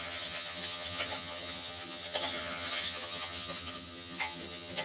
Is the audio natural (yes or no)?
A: no